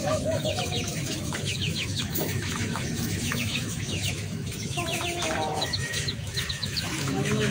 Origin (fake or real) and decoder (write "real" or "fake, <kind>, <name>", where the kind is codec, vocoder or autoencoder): fake, autoencoder, DAC-VAE